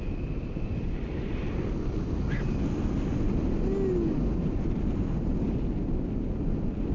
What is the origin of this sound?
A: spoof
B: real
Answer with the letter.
B